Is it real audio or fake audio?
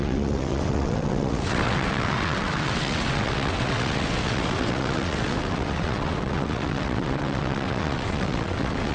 fake